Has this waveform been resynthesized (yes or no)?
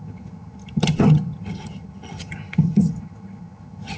yes